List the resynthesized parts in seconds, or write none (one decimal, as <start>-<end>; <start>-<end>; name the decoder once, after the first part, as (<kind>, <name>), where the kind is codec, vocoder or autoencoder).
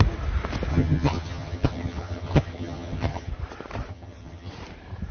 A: 0.7-3.3 (vocoder, HiFi-GAN); 3.9-4.5